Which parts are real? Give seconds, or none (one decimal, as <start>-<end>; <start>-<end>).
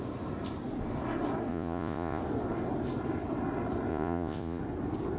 0.0-1.5; 2.2-3.9; 4.6-5.2